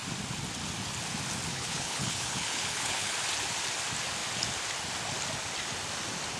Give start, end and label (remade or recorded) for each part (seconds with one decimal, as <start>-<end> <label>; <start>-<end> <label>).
0.0-1.5 recorded; 1.5-3.1 remade; 3.1-6.4 recorded